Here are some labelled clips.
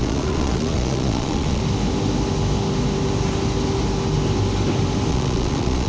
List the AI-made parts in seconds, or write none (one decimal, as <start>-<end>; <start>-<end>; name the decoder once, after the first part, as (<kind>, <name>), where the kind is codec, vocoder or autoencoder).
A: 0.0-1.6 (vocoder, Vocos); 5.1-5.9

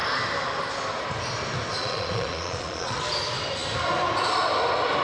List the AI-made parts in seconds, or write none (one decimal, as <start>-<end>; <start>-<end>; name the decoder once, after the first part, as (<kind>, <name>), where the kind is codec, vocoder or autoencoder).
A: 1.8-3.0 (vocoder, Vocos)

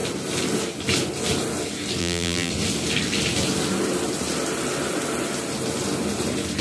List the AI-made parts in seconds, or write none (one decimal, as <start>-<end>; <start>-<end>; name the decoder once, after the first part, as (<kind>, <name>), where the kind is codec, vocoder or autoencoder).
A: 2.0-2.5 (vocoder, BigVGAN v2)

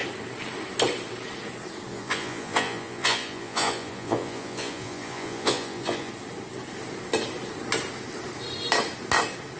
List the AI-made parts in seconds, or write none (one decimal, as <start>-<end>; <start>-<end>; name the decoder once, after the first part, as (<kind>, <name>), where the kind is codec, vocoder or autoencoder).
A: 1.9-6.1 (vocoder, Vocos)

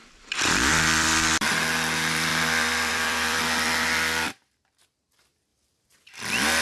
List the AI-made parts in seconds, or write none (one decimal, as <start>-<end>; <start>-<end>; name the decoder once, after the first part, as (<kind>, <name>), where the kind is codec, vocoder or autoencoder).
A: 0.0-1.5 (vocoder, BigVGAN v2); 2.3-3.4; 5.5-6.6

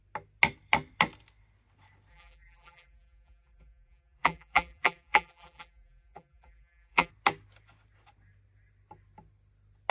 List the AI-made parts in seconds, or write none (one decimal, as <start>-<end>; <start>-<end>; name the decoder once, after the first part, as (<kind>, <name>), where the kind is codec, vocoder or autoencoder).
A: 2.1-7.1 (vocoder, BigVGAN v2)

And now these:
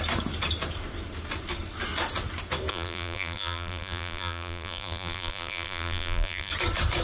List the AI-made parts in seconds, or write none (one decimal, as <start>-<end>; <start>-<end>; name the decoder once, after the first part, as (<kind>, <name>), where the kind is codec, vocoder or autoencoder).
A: 2.7-6.5 (vocoder, BigVGAN v2)